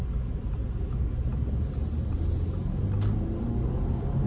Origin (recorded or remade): recorded